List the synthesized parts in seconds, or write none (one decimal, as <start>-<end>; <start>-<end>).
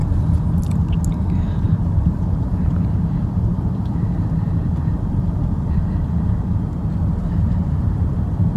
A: 1.3-6.0; 7.3-8.6